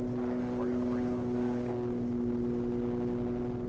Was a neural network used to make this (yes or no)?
no